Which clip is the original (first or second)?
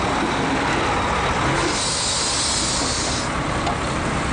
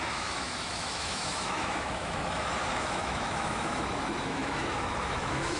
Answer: first